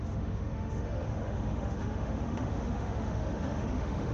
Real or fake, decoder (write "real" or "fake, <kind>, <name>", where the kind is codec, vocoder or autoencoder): fake, autoencoder, DAC-VAE